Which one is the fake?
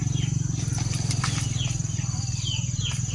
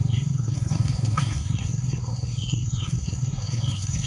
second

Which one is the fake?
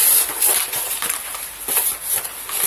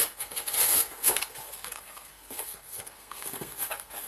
second